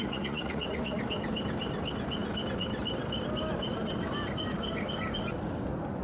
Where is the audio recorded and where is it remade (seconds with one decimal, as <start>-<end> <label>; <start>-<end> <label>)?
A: 0.0-1.0 remade; 1.0-6.0 recorded